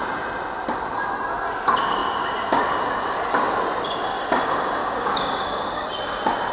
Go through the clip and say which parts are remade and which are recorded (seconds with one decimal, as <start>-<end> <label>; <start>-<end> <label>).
0.0-4.8 recorded; 4.8-5.9 remade; 5.9-6.5 recorded